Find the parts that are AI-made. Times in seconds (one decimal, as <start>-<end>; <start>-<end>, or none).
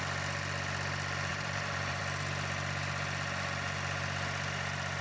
1.3-2.0